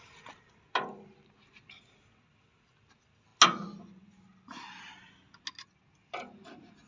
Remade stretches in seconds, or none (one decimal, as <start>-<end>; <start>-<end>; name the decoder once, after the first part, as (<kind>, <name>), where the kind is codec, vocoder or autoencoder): none